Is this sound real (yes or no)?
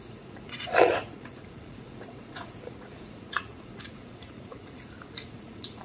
no